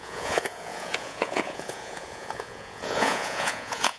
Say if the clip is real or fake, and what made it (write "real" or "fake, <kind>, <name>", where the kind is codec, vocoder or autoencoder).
fake, vocoder, Vocos